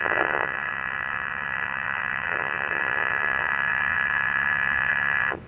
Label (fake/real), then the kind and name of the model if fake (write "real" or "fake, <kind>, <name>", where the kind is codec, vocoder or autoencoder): fake, vocoder, WaveNeXt